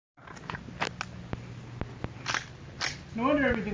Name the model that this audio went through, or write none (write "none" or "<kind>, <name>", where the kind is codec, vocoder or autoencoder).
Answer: none